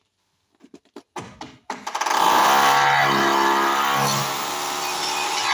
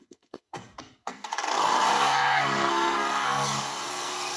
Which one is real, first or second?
first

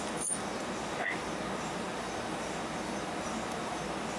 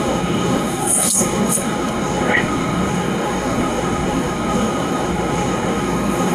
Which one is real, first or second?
first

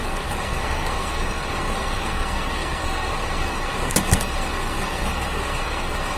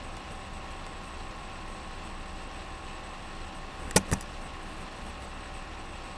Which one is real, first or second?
second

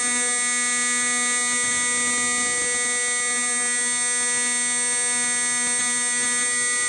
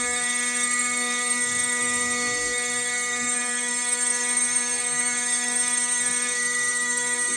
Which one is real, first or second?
first